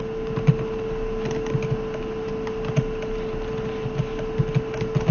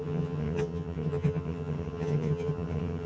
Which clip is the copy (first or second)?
second